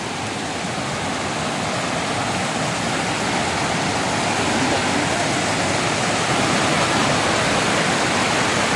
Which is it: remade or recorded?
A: recorded